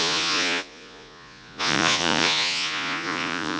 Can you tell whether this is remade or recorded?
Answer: remade